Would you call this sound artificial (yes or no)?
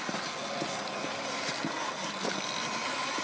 no